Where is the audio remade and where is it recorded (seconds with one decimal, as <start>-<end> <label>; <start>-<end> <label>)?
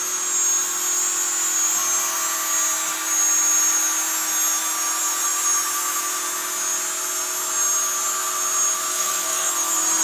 0.0-8.9 recorded; 8.9-9.5 remade; 9.5-10.0 recorded